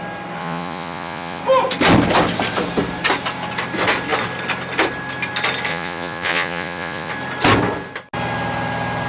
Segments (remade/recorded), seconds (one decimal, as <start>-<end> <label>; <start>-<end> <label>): 0.0-0.4 recorded; 0.4-1.4 remade; 1.4-5.7 recorded; 5.7-7.1 remade; 7.1-9.1 recorded